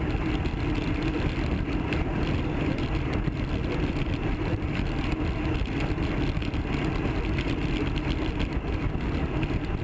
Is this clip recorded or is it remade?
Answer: recorded